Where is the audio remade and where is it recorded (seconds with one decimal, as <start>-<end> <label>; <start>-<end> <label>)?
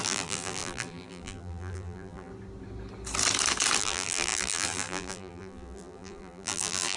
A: 0.0-2.3 remade; 2.3-3.8 recorded; 3.8-7.0 remade